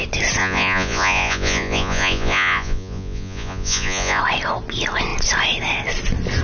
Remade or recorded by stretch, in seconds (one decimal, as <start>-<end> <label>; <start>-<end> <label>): 0.0-0.4 recorded; 0.4-4.2 remade; 4.2-6.4 recorded